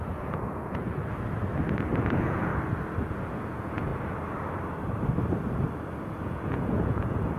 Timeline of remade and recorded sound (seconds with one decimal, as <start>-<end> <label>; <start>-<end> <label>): 0.0-1.0 remade; 1.0-2.0 recorded; 2.0-2.5 remade; 2.5-3.1 recorded; 3.1-3.9 remade; 3.9-6.2 recorded; 6.2-7.4 remade